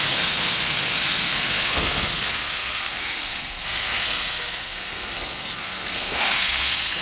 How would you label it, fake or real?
fake